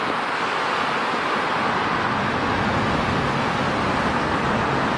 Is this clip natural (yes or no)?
yes